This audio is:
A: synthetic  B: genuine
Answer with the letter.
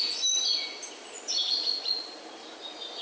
B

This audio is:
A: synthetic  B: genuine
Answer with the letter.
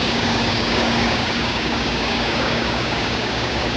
A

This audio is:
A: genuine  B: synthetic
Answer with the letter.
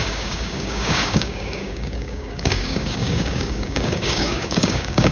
B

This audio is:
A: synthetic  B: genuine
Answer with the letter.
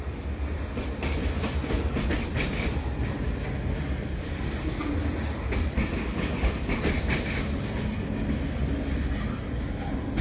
B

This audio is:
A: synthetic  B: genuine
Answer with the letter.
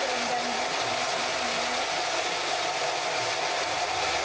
B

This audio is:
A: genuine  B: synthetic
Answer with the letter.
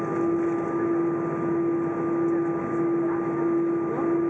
A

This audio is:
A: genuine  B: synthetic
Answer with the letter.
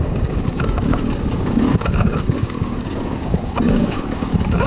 B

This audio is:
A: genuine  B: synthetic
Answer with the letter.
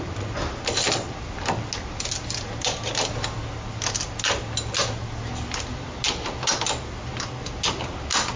A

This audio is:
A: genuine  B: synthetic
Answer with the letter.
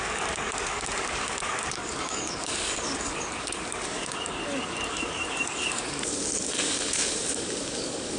B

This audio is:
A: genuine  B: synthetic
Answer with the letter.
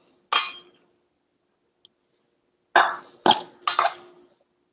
A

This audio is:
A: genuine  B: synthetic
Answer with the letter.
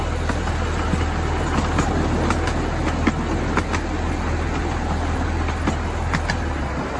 A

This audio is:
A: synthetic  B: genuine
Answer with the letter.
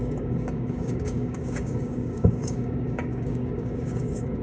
A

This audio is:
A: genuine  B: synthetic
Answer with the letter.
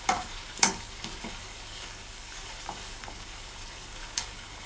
B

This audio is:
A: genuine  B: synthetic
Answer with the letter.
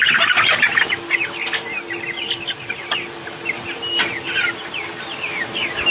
A